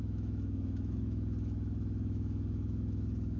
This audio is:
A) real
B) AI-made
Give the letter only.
B